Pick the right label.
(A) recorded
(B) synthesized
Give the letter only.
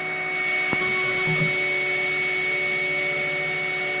A